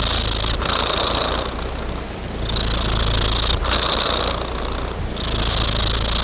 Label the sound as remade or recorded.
recorded